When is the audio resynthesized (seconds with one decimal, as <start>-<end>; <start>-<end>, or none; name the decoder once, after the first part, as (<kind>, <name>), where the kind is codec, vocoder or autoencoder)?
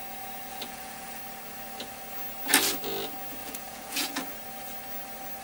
0.5-1.2 (vocoder, Vocos); 3.4-4.3